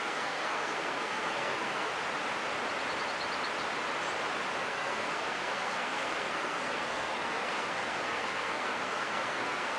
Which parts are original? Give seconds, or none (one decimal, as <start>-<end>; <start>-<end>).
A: 1.9-4.6